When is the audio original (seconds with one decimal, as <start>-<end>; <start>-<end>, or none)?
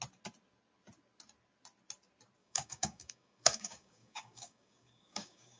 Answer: 0.0-2.4